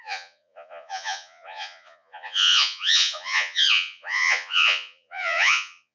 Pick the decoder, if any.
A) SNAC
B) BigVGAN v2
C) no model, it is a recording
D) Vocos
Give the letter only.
D